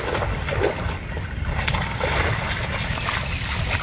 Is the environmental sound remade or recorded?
recorded